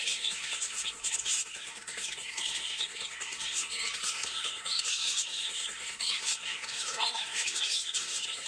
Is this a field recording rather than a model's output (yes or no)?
no